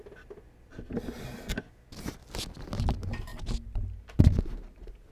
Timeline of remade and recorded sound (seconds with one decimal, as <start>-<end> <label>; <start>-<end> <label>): 0.0-5.1 recorded